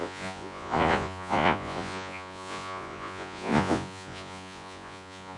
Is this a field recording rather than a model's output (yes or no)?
no